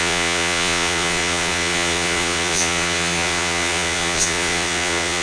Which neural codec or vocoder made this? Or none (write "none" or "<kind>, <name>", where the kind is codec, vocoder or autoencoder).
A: vocoder, Vocos